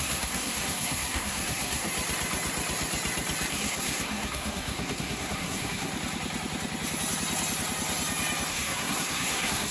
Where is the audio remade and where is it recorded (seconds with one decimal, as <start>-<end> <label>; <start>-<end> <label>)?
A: 0.0-1.9 remade; 1.9-3.5 recorded; 3.5-5.9 remade; 5.9-8.5 recorded; 8.5-9.7 remade